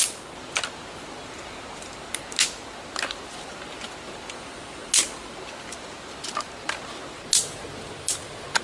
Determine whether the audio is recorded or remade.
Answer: recorded